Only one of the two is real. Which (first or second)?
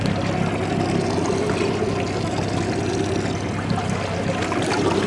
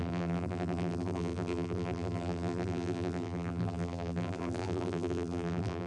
first